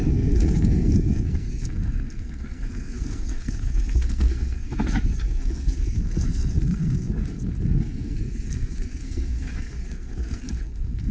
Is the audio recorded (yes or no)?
no